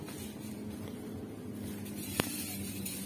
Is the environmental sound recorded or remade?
recorded